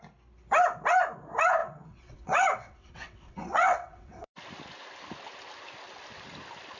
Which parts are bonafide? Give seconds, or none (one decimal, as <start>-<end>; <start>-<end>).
0.0-1.6; 4.3-6.8